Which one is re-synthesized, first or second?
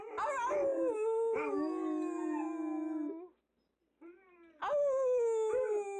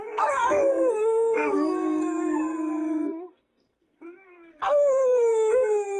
second